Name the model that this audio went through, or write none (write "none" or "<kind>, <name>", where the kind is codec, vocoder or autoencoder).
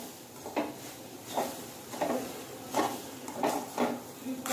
none